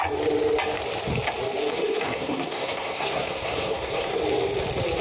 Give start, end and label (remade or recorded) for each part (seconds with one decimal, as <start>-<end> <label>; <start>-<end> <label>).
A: 0.0-1.7 recorded; 1.7-4.2 remade; 4.2-5.0 recorded